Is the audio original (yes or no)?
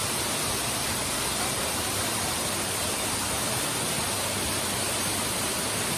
yes